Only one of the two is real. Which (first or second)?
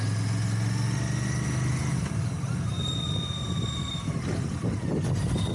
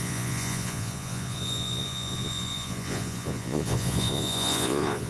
first